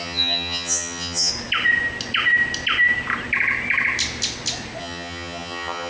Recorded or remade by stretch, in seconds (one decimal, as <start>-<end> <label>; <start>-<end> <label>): 0.0-1.3 remade; 1.3-4.8 recorded; 4.8-5.9 remade